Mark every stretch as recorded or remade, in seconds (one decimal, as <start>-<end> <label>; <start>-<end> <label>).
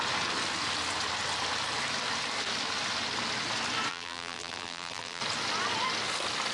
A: 0.0-3.9 recorded; 3.9-5.2 remade; 5.2-6.5 recorded